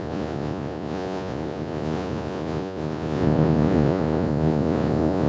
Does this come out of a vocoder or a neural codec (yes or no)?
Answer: yes